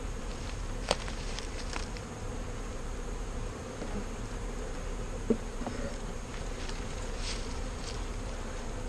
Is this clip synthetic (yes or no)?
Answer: yes